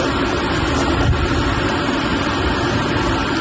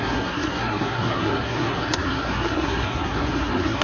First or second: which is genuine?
first